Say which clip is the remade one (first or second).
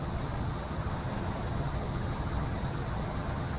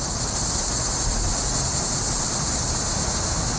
first